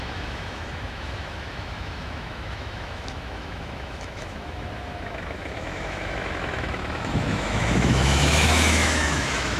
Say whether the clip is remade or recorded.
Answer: remade